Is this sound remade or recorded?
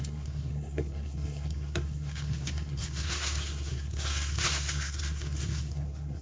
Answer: remade